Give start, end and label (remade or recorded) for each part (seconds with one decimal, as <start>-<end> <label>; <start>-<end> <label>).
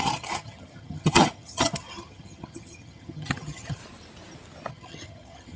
0.0-3.8 remade; 3.8-4.7 recorded; 4.7-5.6 remade